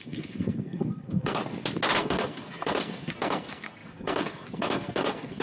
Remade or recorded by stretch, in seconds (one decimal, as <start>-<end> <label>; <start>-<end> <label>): 0.0-1.4 remade; 1.4-2.0 recorded; 2.0-5.4 remade